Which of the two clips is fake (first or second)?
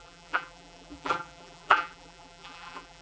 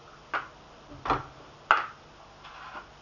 first